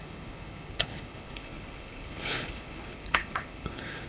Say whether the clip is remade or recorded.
remade